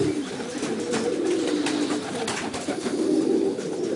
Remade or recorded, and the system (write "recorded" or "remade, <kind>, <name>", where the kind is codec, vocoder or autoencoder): recorded